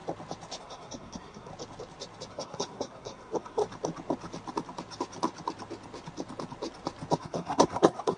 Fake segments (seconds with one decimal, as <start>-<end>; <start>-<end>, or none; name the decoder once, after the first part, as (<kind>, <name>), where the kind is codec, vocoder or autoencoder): 0.6-1.5 (codec, SNAC); 2.3-3.6; 7.2-8.2